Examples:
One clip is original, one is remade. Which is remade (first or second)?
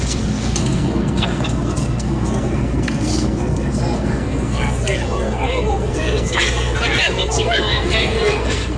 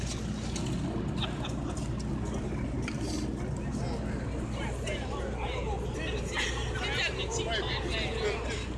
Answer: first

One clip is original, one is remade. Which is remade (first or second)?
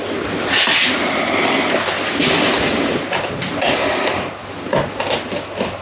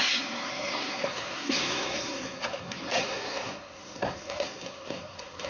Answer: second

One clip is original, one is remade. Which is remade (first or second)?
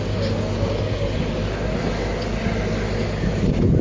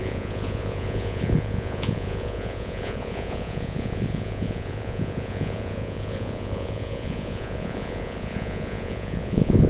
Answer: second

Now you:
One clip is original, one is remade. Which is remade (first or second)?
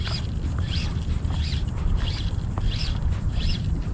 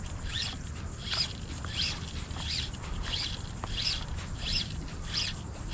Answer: first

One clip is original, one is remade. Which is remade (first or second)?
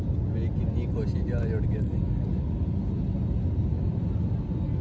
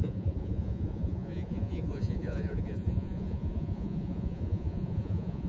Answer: second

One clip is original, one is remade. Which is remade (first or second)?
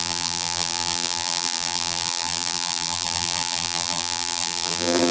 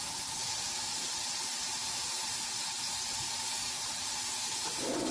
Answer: first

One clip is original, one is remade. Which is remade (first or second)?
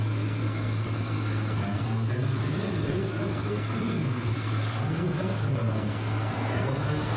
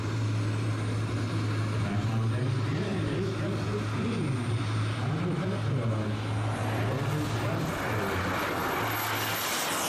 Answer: first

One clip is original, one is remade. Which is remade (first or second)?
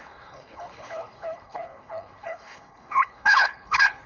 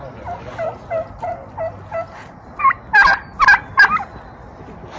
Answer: first